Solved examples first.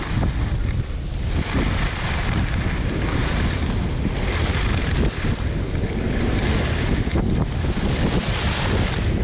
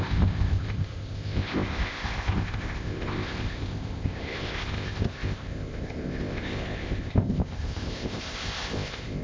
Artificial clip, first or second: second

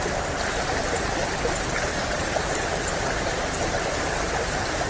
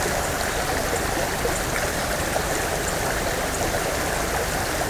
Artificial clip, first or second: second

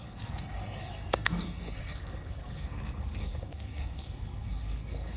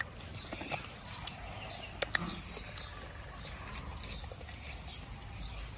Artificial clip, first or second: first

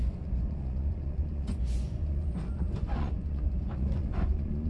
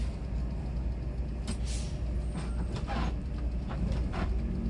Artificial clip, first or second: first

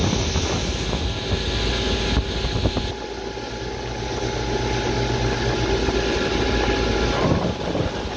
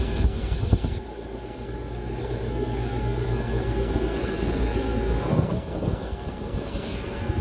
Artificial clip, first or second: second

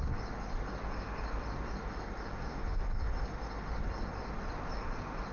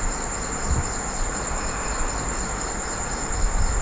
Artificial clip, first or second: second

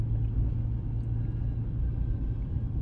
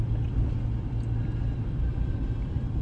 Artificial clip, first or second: second